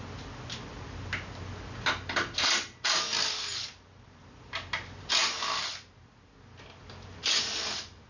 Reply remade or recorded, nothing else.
recorded